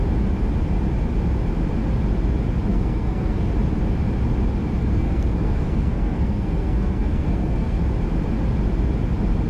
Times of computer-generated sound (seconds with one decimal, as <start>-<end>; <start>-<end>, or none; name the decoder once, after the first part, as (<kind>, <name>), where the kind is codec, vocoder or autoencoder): 2.7-3.5 (codec, SNAC); 4.8-7.8